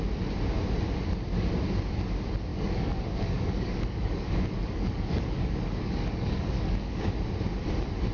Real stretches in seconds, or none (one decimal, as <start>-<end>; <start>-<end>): 0.0-2.5; 7.1-8.1